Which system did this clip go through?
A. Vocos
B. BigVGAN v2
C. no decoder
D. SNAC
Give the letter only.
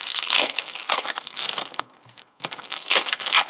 D